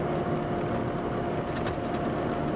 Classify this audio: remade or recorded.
recorded